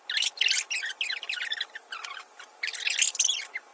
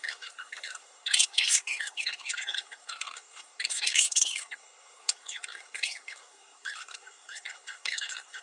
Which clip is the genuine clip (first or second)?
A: first